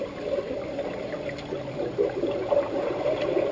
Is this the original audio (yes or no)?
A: yes